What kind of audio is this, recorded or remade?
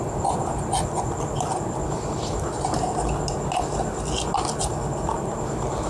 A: recorded